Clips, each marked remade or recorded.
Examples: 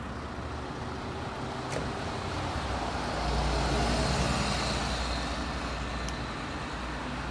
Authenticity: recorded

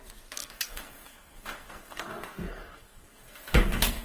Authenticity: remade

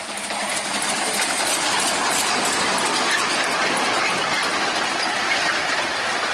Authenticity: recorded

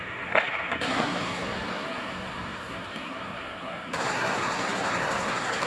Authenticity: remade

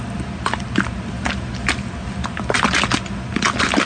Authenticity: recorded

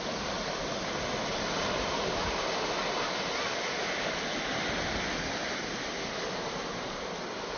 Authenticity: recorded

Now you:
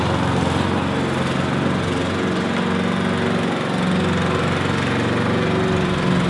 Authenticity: recorded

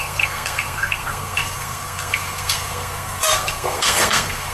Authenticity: remade